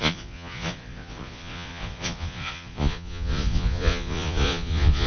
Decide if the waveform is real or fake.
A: fake